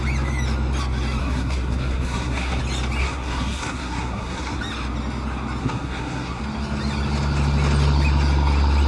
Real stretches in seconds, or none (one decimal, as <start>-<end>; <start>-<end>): 0.0-1.2; 2.6-3.0; 4.6-5.6; 6.4-8.9